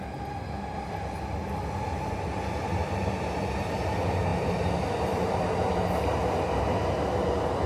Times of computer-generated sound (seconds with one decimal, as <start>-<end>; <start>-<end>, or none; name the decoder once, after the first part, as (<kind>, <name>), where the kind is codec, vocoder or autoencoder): none